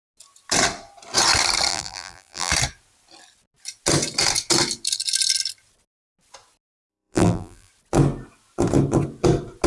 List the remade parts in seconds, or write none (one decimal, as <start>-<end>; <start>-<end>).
1.7-2.5; 6.9-7.7